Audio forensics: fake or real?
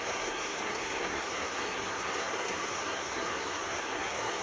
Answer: fake